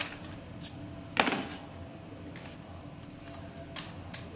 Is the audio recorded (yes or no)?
yes